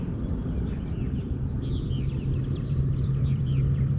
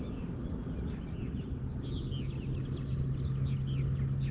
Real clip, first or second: second